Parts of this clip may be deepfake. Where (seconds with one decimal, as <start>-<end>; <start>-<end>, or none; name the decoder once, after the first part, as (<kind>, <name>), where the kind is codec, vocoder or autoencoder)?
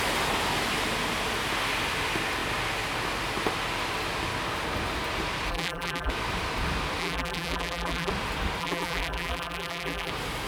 5.5-6.1 (vocoder, BigVGAN v2); 7.0-8.1; 8.6-10.1